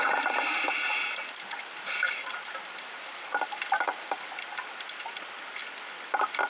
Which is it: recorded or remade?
recorded